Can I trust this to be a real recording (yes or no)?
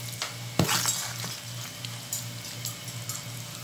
yes